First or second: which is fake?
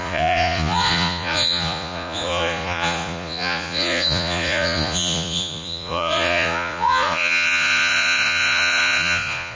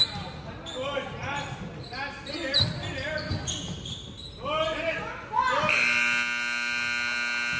first